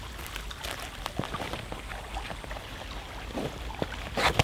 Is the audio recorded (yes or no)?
yes